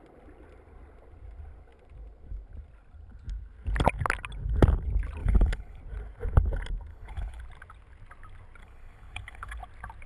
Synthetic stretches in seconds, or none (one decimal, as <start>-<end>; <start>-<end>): 5.2-5.8; 6.9-7.4; 8.6-9.6